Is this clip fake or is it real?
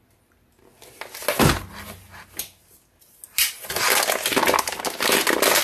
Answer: real